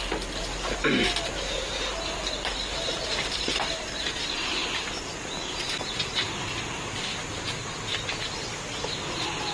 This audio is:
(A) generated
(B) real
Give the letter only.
B